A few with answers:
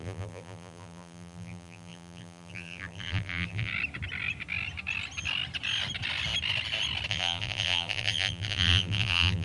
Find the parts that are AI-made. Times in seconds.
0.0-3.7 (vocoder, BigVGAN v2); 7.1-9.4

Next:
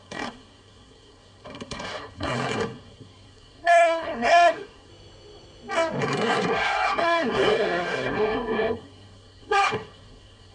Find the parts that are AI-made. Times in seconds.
0.0-4.9 (codec, SNAC); 6.0-10.5

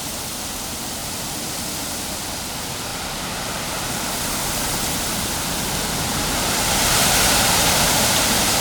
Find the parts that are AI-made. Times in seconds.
1.0-1.6 (vocoder, BigVGAN v2)

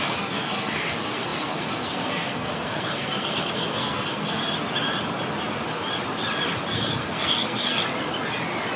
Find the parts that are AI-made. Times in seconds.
0.0-4.4 (codec, SNAC); 6.7-7.8

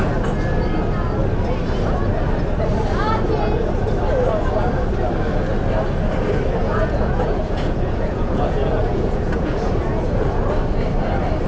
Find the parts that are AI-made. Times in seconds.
6.6-10.4 (vocoder, Vocos)

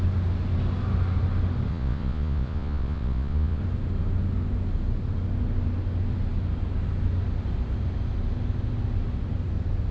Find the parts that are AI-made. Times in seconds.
1.7-3.6 (vocoder, Vocos)